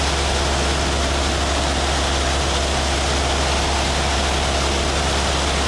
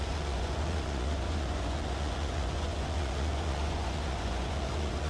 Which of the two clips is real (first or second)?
first